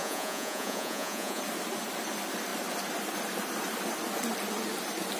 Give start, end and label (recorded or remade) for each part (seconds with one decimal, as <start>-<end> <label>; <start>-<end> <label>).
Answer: 0.0-1.4 remade; 1.4-5.2 recorded